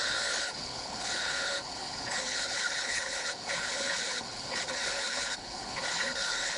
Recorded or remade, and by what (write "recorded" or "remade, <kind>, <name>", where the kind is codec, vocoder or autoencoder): remade, codec, HILCodec